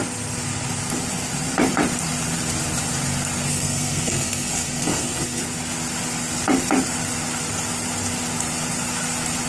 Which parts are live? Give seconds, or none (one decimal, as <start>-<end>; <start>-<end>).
0.0-3.5; 5.4-9.5